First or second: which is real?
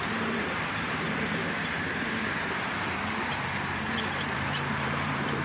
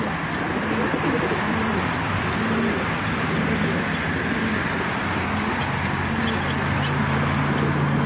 second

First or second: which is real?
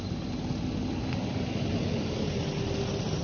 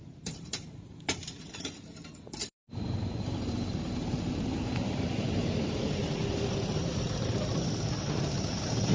first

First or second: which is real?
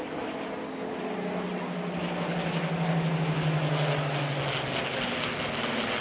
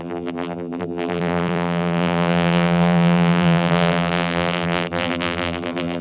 first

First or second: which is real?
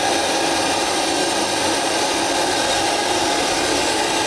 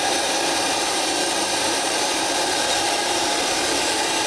first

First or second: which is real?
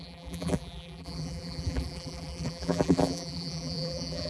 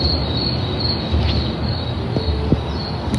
second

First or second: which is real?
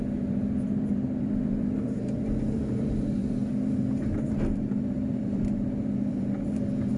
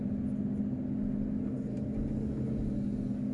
second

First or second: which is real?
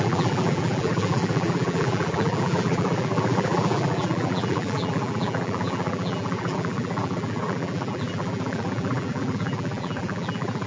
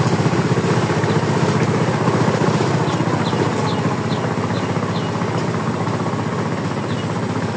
second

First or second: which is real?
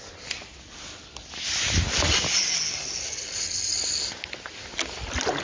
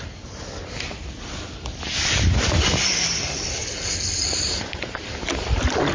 first